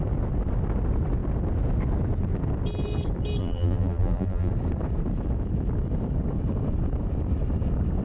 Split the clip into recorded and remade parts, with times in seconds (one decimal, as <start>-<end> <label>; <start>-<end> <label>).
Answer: 0.0-3.4 recorded; 3.4-4.5 remade; 4.5-8.0 recorded